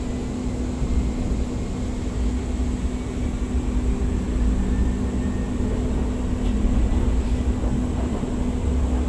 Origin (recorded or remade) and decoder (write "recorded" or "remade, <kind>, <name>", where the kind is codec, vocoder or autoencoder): recorded